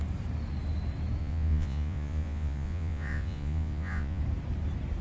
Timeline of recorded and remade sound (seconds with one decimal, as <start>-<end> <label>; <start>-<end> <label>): 0.0-1.2 recorded; 1.2-4.2 remade; 4.2-5.0 recorded